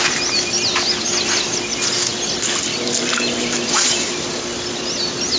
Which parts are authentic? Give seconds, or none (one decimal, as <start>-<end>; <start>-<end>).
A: 0.0-5.4